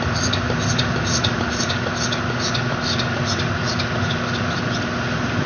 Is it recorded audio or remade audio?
recorded